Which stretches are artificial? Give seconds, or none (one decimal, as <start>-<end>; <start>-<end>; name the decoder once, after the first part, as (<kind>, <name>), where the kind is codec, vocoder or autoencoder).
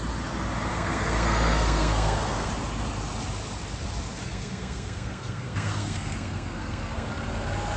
0.7-2.5 (codec, SNAC); 4.2-7.1